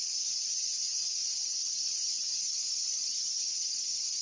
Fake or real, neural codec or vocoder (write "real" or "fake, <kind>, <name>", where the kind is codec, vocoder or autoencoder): fake, vocoder, HiFi-GAN